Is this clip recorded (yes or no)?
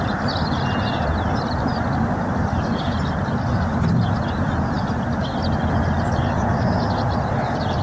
yes